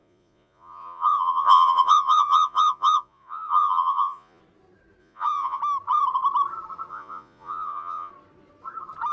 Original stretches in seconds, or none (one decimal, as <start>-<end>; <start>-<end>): 4.4-5.0; 5.6-6.9; 8.1-9.1